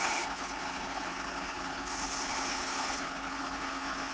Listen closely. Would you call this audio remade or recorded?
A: remade